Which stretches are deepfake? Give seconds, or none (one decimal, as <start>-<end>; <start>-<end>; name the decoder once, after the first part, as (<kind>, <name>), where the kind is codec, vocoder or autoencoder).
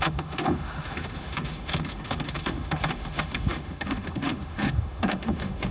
0.0-5.7 (autoencoder, DAC-VAE)